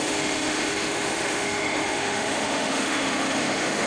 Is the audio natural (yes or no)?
no